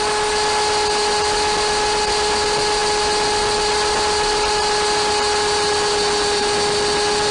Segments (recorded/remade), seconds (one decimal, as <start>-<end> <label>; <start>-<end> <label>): 0.0-7.3 recorded